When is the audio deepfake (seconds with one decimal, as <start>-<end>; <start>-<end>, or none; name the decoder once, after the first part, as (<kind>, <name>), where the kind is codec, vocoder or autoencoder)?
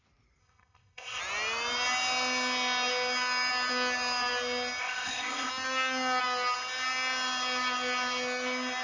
0.4-1.2 (codec, ZipCodec); 4.8-5.5